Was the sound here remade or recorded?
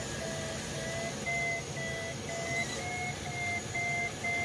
recorded